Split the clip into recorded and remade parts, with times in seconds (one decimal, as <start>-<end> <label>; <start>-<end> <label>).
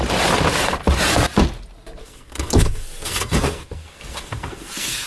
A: 0.0-2.0 recorded; 2.0-5.1 remade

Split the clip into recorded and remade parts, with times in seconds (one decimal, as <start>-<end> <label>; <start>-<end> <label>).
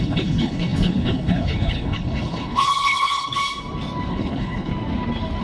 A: 0.0-3.4 remade; 3.4-4.1 recorded; 4.1-4.7 remade; 4.7-5.4 recorded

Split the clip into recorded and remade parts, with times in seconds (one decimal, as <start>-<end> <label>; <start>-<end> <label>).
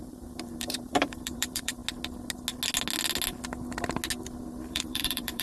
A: 0.0-1.8 remade; 1.8-4.7 recorded; 4.7-5.4 remade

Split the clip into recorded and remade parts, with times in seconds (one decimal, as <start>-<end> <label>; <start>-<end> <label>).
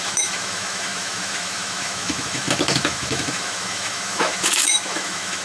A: 0.0-5.4 remade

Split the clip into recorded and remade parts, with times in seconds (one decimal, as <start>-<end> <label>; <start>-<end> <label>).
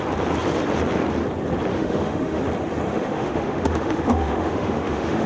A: 0.0-1.7 recorded; 1.7-2.4 remade; 2.4-2.9 recorded; 2.9-5.3 remade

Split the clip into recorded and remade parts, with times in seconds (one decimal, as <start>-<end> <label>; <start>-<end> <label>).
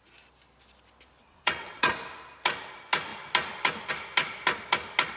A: 0.0-1.2 recorded; 1.2-1.9 remade; 1.9-5.2 recorded